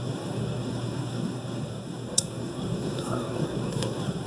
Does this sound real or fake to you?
fake